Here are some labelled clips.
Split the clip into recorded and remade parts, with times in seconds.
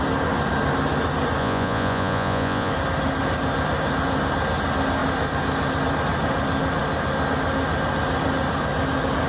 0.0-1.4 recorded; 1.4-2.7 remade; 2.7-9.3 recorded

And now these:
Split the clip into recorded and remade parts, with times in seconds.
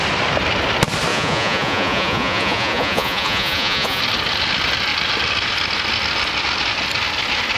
0.0-1.1 recorded; 1.1-4.0 remade; 4.0-7.6 recorded